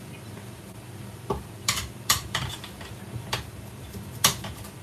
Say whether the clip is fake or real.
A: fake